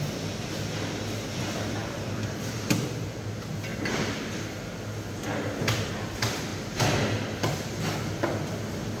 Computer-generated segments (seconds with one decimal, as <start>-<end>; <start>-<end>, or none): 1.8-2.6